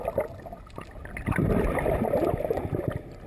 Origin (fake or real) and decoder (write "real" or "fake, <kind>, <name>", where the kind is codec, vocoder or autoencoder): real